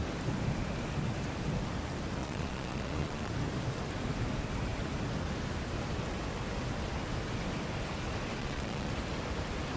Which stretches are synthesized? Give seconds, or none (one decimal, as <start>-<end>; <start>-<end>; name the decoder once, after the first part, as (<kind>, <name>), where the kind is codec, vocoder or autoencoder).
2.2-3.3 (vocoder, Vocos); 8.4-8.9